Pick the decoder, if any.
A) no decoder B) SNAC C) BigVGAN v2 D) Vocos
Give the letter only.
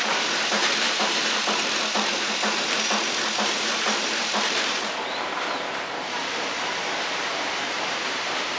C